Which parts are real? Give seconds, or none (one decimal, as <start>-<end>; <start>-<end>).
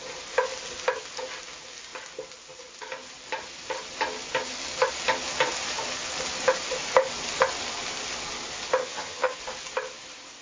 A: 0.0-8.8; 9.4-10.4